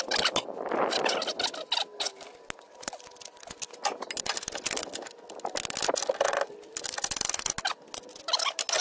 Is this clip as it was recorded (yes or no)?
yes